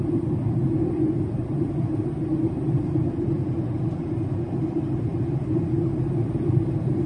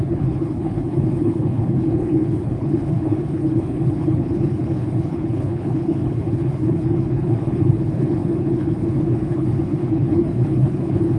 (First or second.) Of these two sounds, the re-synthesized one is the second